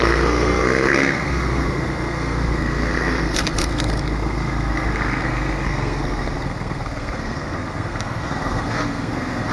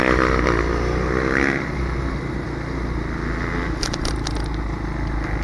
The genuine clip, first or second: second